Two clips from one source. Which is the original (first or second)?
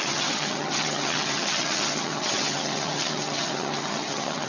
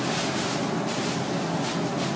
second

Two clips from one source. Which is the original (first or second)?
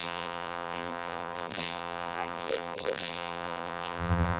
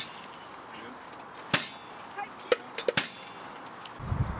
second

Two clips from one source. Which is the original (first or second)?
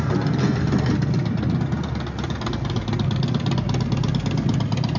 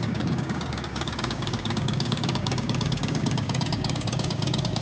first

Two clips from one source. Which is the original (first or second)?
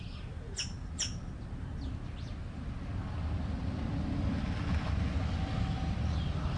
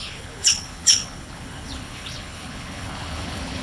first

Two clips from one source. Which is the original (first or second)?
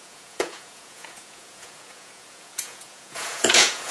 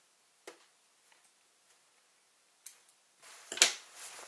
second